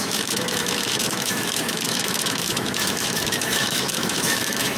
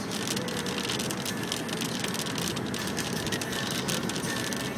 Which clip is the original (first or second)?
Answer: second